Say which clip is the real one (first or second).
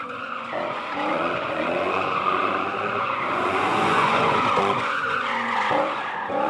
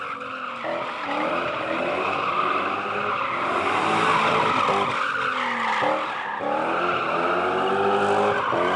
second